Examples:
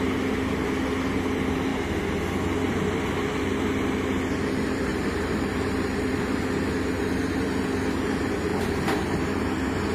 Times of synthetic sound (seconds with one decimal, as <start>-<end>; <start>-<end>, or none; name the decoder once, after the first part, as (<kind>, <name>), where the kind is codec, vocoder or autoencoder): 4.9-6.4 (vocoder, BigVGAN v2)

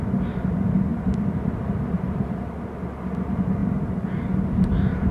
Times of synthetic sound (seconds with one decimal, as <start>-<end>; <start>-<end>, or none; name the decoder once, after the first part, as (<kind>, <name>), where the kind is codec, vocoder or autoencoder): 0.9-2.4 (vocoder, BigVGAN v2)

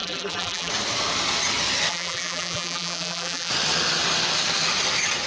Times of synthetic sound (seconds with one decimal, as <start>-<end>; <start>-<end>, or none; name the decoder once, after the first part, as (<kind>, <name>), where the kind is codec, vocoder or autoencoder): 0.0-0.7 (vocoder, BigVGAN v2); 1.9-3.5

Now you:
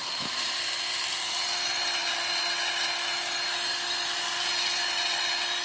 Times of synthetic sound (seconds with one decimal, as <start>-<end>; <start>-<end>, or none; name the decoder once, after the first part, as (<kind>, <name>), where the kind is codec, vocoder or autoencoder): 0.0-0.6 (vocoder, BigVGAN v2)

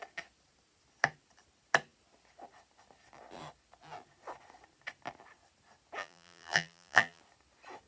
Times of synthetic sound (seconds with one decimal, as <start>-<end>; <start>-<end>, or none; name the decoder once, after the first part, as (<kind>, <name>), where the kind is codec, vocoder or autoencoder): 6.0-7.2 (vocoder, BigVGAN v2)

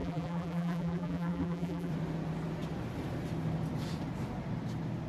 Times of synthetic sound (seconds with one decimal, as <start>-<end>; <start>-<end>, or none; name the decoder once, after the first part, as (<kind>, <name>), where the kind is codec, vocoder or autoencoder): 0.0-1.9 (vocoder, BigVGAN v2)